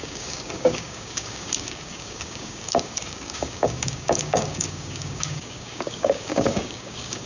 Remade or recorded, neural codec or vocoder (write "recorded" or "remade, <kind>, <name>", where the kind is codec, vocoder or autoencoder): remade, codec, DAC